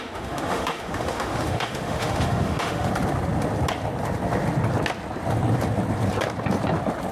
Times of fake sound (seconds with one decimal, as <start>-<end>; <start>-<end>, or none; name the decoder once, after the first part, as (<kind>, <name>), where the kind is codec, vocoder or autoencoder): 0.0-2.9 (autoencoder, DAC-VAE)